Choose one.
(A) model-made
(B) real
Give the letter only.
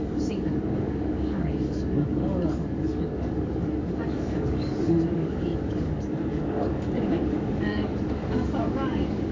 A